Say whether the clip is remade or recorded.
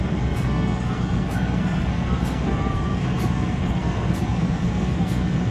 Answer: remade